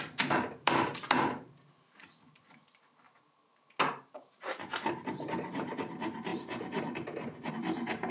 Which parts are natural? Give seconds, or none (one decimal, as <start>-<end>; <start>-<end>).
0.9-3.9